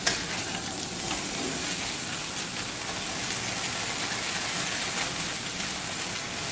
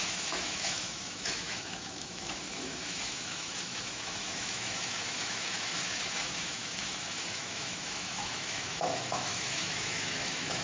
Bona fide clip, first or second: first